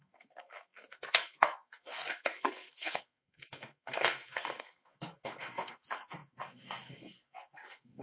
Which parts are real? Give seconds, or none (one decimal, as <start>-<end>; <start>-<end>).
none